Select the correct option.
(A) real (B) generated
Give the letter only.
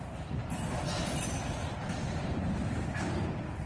A